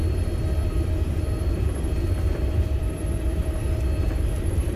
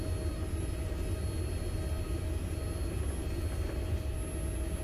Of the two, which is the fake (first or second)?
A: first